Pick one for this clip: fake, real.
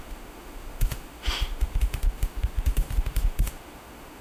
fake